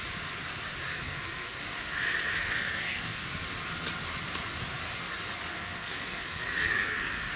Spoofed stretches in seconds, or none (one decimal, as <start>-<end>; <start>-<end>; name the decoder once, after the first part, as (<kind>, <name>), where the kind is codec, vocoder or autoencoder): 0.9-1.6 (codec, SNAC); 2.4-3.2; 5.5-7.4